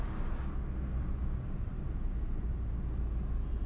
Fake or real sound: real